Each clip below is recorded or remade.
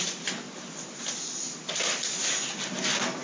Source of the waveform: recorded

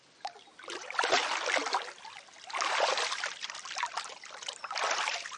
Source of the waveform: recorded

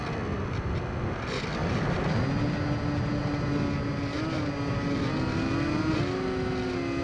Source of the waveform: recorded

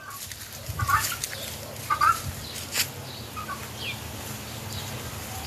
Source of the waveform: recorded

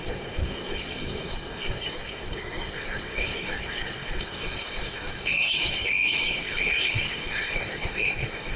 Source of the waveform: remade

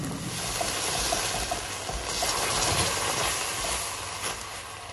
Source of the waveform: recorded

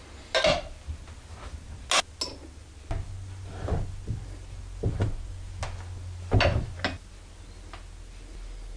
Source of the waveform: recorded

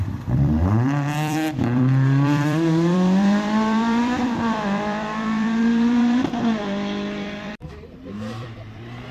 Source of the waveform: remade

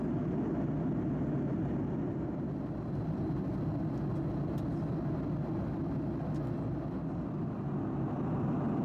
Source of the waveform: recorded